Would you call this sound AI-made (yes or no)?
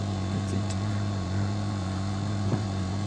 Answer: yes